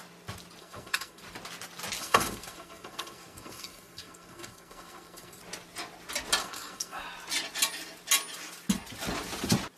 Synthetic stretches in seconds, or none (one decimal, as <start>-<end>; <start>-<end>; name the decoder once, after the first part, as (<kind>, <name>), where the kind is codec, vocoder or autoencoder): 0.6-1.2 (codec, SNAC); 2.0-5.4; 6.4-7.0